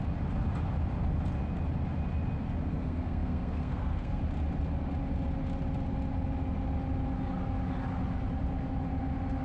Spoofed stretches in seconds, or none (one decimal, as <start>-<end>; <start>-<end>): 2.7-4.2